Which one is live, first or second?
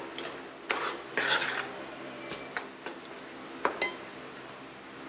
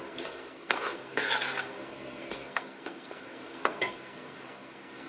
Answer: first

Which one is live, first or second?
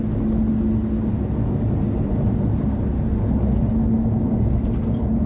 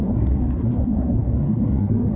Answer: first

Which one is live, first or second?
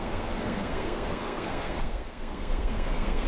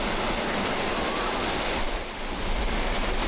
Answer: second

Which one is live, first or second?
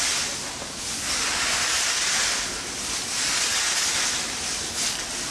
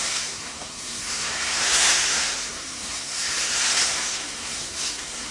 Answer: first